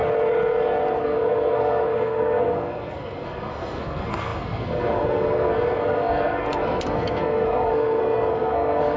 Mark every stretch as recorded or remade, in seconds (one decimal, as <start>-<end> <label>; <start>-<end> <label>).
0.0-1.0 recorded; 1.0-9.0 remade